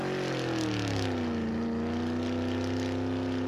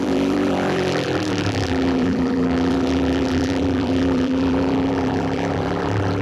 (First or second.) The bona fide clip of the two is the first